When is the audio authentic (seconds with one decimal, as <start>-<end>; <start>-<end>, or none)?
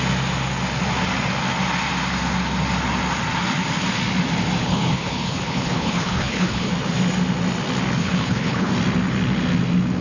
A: 0.0-4.6; 6.7-8.0; 8.7-10.0